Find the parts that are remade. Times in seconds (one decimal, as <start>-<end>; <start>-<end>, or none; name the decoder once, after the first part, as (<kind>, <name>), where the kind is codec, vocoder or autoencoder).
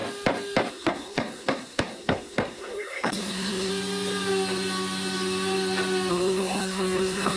0.7-3.7 (codec, SNAC); 6.1-7.4